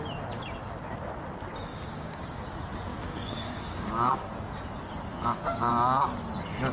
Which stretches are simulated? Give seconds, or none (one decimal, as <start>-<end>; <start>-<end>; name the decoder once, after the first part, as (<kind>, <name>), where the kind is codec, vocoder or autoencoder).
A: 1.7-2.4 (codec, DAC); 2.9-4.3; 5.1-5.7

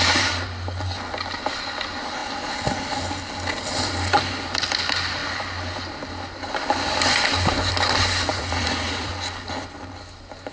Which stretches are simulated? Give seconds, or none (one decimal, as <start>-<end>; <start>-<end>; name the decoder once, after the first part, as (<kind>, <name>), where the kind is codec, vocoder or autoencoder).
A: 8.3-9.1 (vocoder, Vocos)

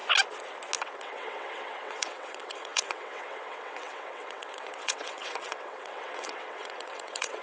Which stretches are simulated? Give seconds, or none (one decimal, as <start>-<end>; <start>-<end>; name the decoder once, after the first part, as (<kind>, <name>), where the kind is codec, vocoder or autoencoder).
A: 0.8-7.4 (vocoder, WaveNeXt)